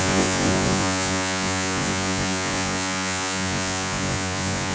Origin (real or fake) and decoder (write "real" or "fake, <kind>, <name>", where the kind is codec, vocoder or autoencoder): fake, vocoder, Vocos